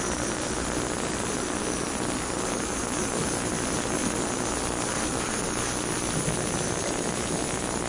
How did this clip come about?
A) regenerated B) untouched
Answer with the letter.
B